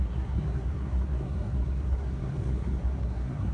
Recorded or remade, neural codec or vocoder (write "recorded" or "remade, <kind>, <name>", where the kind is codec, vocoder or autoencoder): remade, codec, SNAC